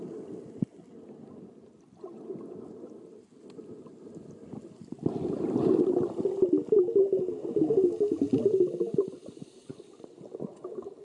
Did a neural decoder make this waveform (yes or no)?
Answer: no